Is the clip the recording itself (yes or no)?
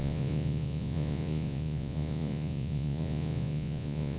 no